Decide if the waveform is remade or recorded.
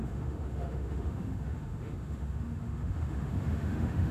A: remade